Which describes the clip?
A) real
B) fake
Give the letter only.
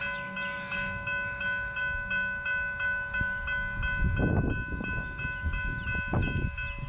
A